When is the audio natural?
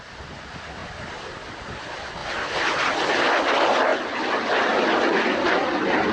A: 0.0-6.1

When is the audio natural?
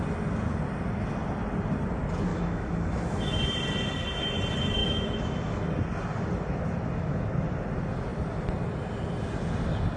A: 0.0-2.3; 3.4-4.8; 5.7-10.0